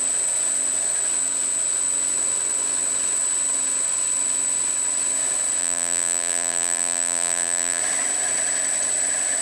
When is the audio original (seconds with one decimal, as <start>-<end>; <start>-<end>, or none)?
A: 0.0-5.6; 7.8-9.4